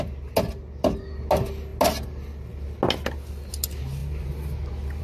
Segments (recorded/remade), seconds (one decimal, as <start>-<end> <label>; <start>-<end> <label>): 0.0-5.0 recorded